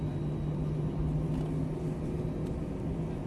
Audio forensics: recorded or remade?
recorded